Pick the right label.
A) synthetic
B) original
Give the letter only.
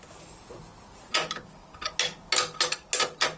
B